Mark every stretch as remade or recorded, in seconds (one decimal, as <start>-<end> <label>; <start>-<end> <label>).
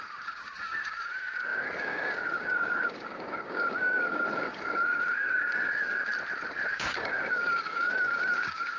0.0-6.1 remade; 6.1-6.7 recorded; 6.7-8.8 remade